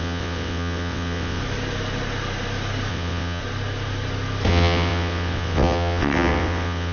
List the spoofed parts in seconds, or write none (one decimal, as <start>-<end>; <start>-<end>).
0.0-1.4; 2.9-3.4; 4.5-6.9